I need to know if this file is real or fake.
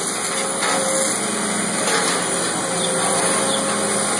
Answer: real